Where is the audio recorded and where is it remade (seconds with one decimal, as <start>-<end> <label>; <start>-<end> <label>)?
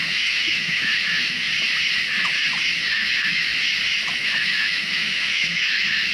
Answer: 0.0-1.5 remade; 1.5-2.9 recorded; 2.9-3.5 remade; 3.5-4.2 recorded; 4.2-6.1 remade